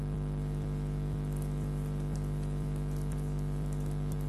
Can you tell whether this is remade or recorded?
recorded